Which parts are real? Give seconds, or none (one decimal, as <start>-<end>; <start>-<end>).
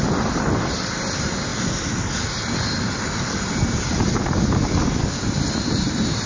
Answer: 0.0-6.3